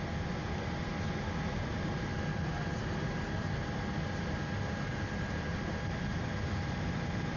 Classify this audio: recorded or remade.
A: recorded